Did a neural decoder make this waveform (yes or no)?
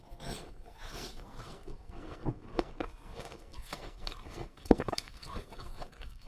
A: yes